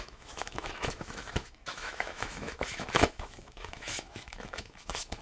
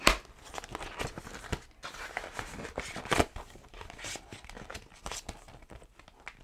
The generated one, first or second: first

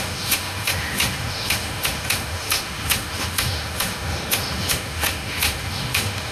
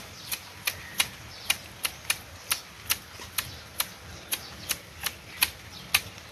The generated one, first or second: first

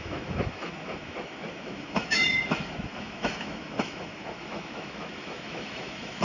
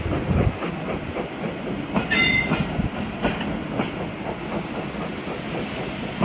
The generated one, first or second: first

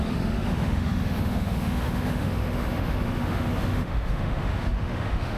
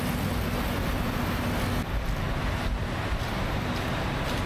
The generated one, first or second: first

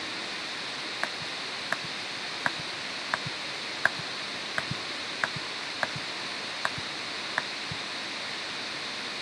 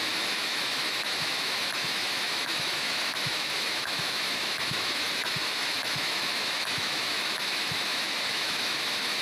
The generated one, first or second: second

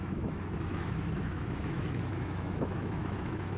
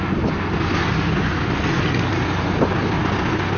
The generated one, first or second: first